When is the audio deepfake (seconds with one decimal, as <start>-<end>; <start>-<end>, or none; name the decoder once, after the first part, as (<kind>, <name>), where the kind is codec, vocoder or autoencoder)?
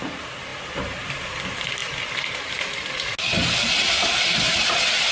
none